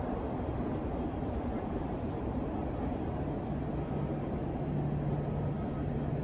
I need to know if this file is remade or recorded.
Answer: recorded